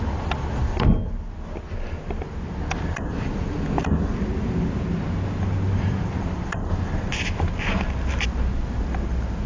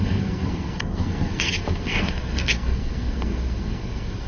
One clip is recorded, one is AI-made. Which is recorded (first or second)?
first